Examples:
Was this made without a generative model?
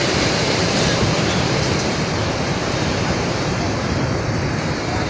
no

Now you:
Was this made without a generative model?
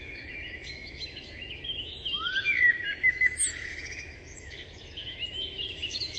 no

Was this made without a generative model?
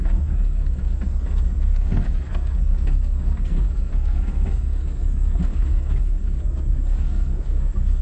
no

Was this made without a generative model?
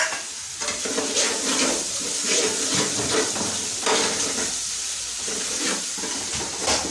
yes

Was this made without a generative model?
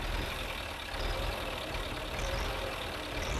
no